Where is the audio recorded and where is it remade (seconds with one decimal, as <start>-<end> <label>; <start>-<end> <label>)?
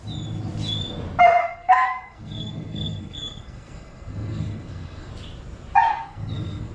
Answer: 0.0-1.4 recorded; 1.4-5.1 remade; 5.1-5.9 recorded; 5.9-6.7 remade